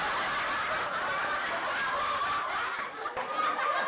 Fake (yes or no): no